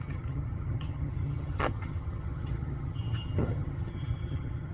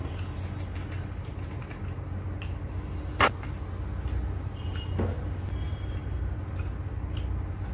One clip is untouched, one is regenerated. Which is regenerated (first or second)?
first